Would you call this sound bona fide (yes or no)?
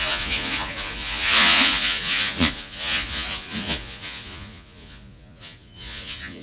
no